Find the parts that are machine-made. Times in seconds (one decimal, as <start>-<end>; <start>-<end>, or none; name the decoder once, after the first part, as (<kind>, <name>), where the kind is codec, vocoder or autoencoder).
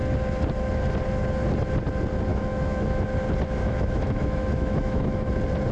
2.3-3.0 (autoencoder, DAC-VAE); 3.6-5.3